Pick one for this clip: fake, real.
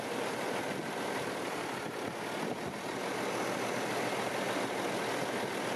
real